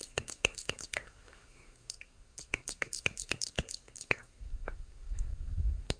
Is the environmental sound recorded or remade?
remade